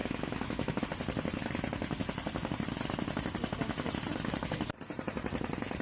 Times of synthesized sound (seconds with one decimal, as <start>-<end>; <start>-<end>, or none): 0.0-0.8